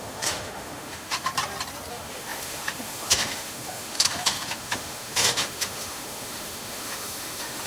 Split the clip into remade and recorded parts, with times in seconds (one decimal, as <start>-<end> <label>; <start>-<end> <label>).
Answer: 0.0-1.3 remade; 1.3-1.9 recorded; 1.9-7.7 remade